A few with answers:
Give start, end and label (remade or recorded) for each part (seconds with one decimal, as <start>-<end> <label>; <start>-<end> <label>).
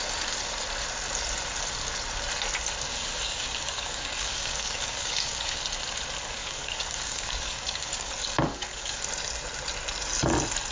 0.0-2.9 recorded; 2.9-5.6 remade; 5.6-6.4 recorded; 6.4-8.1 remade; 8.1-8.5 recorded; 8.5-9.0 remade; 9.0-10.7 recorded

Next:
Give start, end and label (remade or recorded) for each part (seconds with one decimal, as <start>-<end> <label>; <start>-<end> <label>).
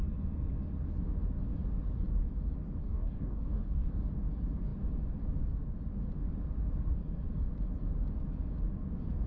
0.0-2.8 recorded; 2.8-3.9 remade; 3.9-9.3 recorded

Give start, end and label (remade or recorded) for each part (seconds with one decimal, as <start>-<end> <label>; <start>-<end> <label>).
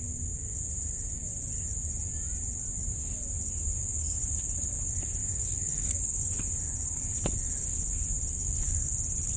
0.0-5.2 recorded; 5.2-6.0 remade; 6.0-9.4 recorded